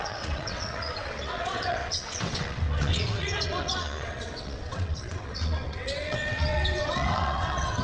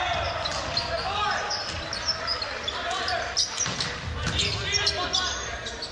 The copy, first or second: first